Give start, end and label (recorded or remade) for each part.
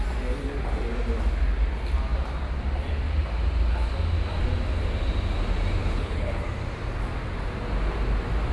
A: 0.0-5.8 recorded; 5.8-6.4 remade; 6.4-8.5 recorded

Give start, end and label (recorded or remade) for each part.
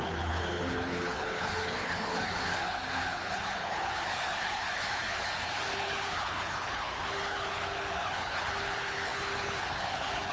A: 0.0-10.3 remade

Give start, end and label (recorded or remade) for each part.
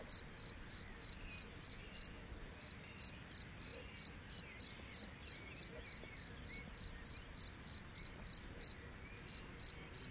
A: 0.0-10.1 recorded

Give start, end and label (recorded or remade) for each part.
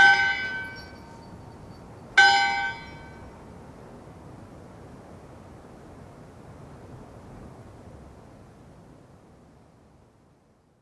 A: 0.0-10.8 recorded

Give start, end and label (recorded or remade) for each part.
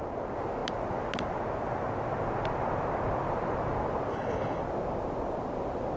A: 0.0-4.1 recorded; 4.1-4.6 remade; 4.6-6.0 recorded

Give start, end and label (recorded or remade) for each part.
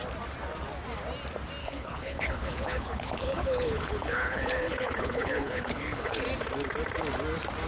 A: 0.0-1.6 recorded; 1.6-6.2 remade; 6.2-7.7 recorded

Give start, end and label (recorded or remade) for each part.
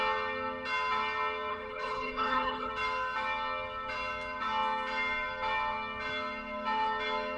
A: 0.0-1.5 recorded; 1.5-2.7 remade; 2.7-7.4 recorded